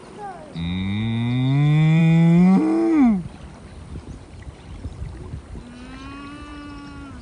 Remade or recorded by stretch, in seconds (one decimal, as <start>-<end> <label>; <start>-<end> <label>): 0.0-7.2 recorded